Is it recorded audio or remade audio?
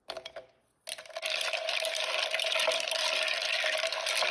recorded